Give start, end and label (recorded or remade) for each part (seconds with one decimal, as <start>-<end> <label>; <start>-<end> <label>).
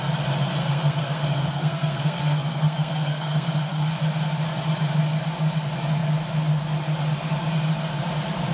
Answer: 0.0-0.6 recorded; 0.6-4.0 remade; 4.0-8.5 recorded